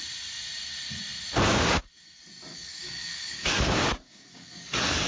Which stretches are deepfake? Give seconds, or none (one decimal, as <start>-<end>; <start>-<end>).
2.5-5.1